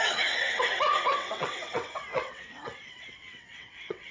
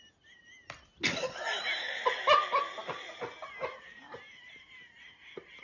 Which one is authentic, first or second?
second